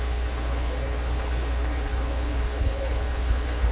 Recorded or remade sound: remade